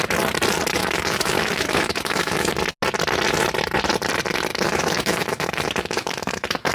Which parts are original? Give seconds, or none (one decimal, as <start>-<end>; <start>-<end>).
0.0-0.8; 2.5-4.5